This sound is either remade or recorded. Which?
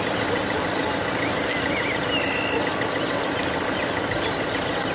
recorded